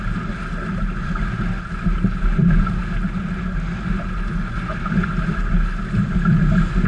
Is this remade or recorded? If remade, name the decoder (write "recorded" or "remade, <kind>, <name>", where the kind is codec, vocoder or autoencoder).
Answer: recorded